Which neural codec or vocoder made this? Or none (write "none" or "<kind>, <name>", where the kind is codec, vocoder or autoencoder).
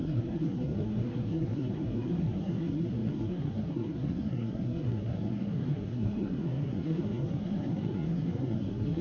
codec, SNAC